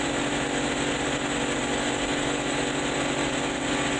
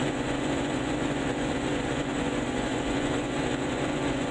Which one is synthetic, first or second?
second